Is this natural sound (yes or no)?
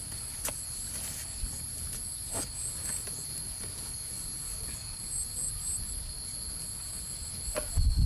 yes